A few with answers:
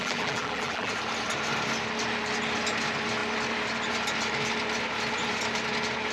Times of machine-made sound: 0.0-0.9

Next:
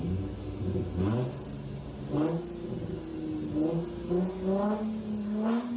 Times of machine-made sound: none

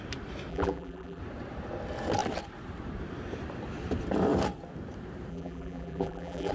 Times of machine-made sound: 0.5-1.2; 5.3-6.5

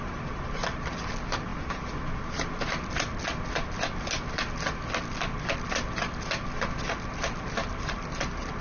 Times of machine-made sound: 0.0-1.5; 6.7-8.6

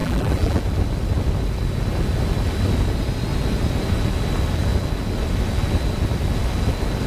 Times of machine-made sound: 0.0-0.6

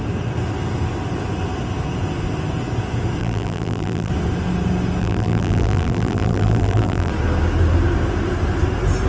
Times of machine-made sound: 3.2-4.1; 5.0-7.1